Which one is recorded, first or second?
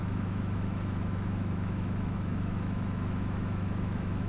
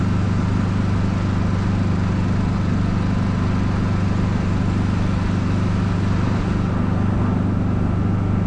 second